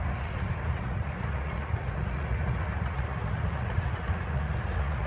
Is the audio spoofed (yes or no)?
yes